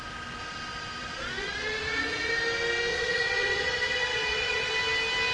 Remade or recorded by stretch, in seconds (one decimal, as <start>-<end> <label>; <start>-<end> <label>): 0.0-1.0 recorded; 1.0-2.3 remade; 2.3-2.9 recorded; 2.9-4.7 remade; 4.7-5.3 recorded